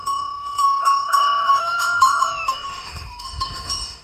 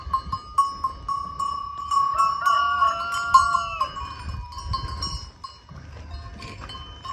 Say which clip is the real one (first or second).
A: second